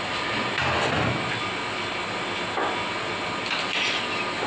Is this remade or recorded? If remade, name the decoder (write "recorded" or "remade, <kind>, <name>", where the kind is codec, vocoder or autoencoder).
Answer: recorded